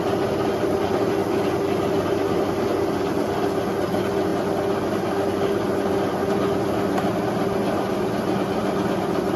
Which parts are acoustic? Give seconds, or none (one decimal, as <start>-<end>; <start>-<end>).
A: 0.0-9.4